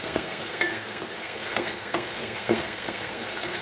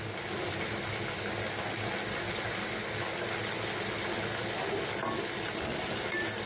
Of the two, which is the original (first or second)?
second